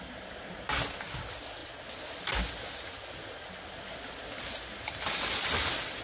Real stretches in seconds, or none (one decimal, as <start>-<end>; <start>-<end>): 0.0-6.0